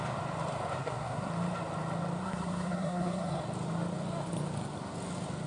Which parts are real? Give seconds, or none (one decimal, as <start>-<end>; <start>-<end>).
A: 0.0-0.8; 1.3-2.2; 3.4-5.5